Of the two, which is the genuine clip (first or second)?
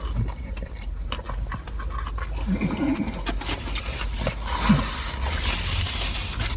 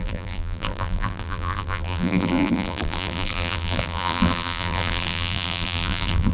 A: first